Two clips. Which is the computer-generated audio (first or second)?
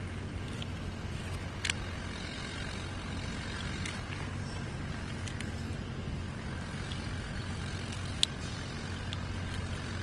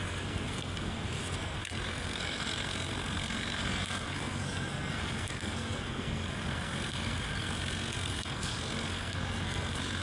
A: second